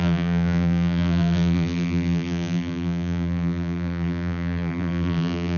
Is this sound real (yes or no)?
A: no